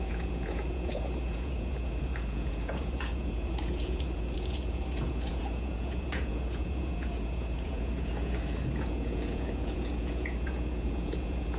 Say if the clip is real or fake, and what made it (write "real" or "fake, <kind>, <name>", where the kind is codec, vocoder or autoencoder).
fake, vocoder, Vocos